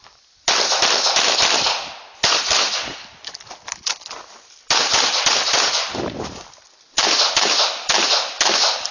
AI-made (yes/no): no